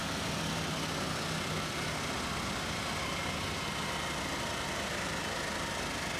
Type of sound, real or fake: real